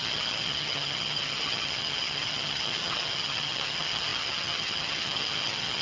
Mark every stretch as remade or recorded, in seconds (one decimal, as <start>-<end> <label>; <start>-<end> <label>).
0.0-5.8 remade